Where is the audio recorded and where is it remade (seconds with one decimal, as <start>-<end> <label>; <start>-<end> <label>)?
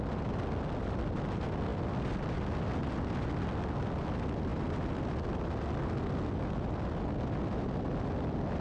0.0-8.6 recorded